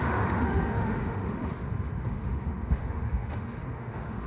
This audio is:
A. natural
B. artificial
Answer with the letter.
B